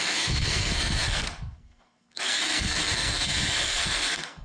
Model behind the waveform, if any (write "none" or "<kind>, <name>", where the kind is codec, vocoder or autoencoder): codec, SNAC